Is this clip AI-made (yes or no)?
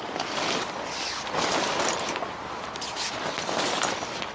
no